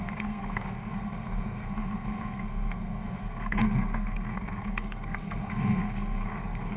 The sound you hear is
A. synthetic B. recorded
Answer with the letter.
A